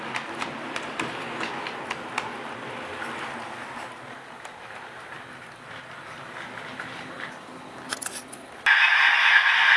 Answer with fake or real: real